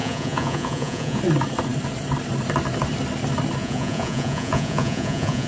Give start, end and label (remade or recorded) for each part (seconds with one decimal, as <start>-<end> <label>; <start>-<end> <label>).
0.0-1.2 remade; 1.2-3.6 recorded; 3.6-5.5 remade